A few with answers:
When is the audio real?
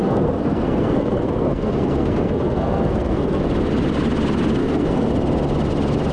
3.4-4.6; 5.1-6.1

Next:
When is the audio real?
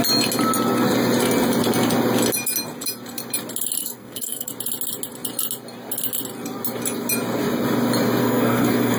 0.0-3.8; 4.5-8.2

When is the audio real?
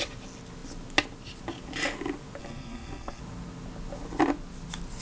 0.0-2.4; 3.2-5.0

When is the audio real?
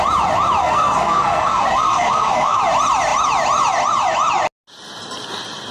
0.0-0.6; 2.6-5.7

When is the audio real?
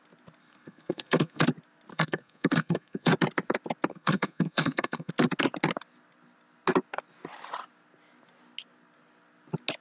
0.0-0.4; 1.4-1.9; 3.1-3.9; 5.1-9.8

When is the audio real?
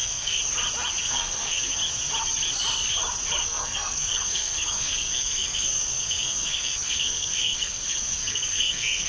0.4-1.0; 1.8-3.4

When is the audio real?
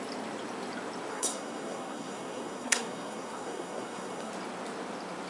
0.0-1.1; 4.3-5.3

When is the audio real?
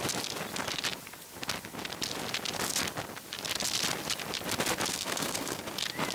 0.0-4.9; 5.6-6.1